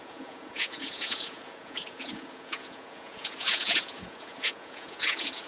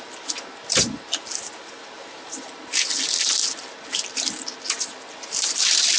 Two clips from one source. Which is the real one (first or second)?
second